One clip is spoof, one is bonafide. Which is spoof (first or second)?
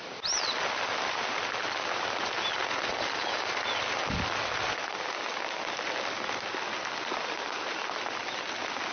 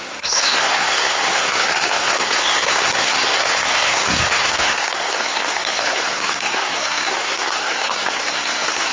second